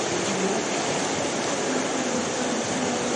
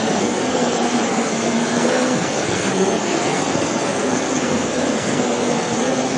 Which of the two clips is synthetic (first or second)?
second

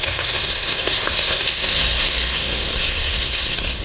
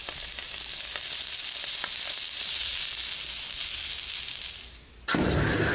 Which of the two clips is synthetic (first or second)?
first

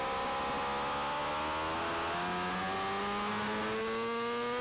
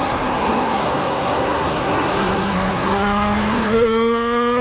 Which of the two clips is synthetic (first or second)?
second